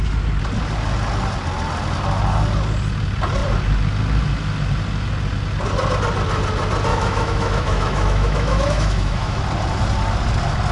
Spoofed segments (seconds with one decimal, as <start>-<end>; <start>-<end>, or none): 6.9-9.4